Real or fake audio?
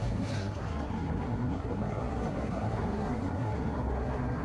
fake